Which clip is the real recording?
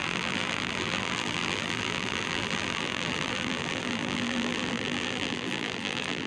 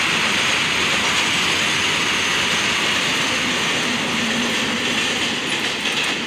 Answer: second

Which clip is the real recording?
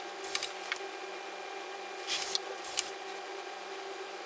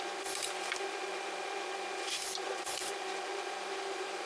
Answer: first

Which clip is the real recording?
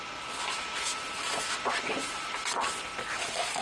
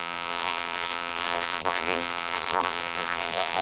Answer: first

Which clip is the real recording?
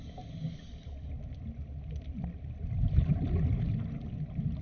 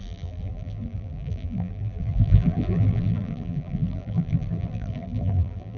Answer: first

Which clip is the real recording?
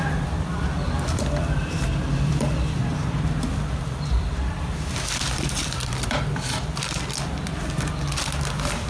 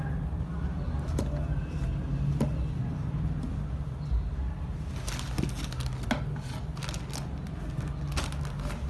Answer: second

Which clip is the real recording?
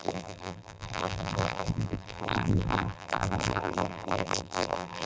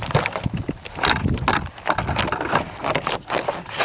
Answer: second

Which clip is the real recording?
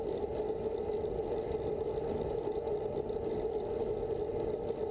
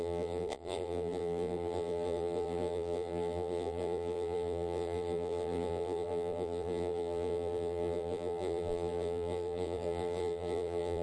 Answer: first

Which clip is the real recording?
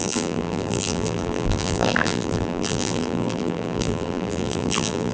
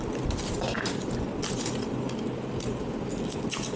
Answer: second